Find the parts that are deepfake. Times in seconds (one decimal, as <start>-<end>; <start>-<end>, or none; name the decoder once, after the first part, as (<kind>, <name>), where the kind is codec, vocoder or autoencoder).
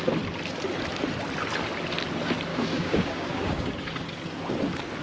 2.5-3.7 (codec, DAC)